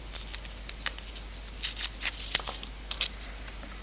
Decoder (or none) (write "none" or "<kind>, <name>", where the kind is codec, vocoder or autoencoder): none